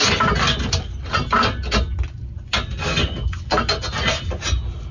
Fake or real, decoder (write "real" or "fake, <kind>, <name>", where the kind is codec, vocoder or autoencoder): real